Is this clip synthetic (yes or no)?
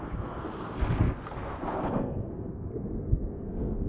yes